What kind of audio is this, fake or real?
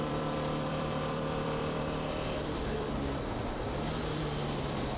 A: fake